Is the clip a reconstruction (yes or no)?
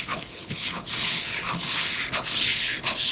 yes